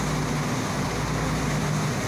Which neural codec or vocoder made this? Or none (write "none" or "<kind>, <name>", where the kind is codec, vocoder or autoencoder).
none